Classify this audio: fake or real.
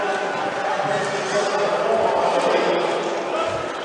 real